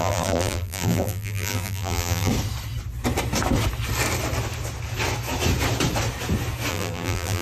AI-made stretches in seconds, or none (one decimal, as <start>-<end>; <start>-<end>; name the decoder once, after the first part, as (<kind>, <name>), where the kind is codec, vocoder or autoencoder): 0.0-2.3 (vocoder, BigVGAN v2); 6.7-7.4